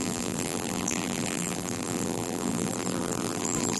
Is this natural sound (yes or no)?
no